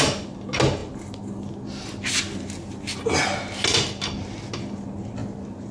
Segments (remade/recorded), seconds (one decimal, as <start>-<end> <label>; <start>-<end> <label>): 0.0-5.7 recorded